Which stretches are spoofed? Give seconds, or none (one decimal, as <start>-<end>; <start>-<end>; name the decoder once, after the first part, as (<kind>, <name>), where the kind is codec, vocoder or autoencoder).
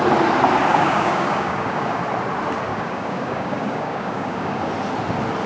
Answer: 0.7-2.0 (codec, DAC); 2.7-4.7